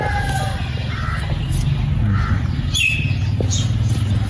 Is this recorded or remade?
recorded